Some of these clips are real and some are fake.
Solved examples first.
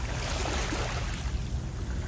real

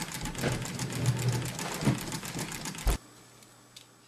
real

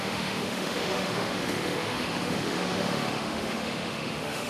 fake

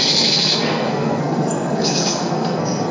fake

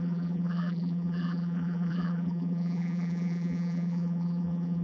fake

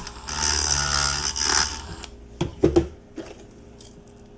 real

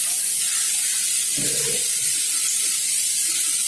real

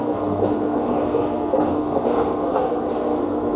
fake